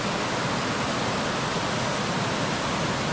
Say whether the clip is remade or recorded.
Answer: recorded